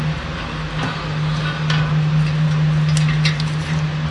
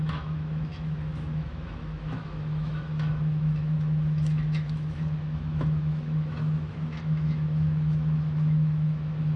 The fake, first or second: second